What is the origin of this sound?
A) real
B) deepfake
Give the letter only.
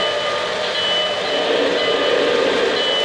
A